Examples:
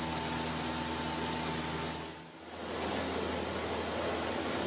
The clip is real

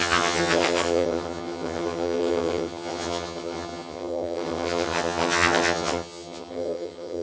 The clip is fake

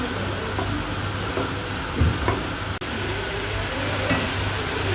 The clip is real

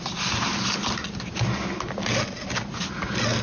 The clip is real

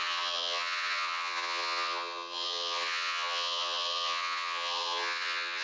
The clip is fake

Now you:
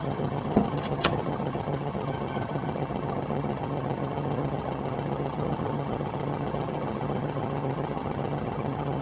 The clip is fake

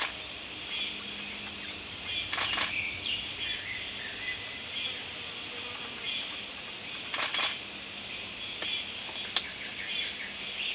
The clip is real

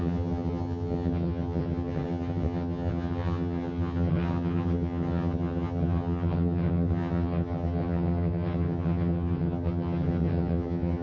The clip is fake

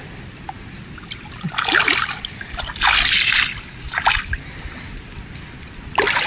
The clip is real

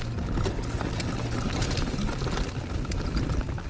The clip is real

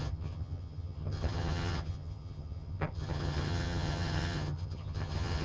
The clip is fake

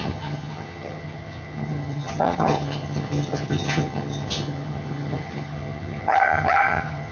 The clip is fake